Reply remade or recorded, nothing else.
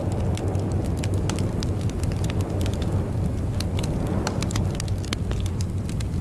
recorded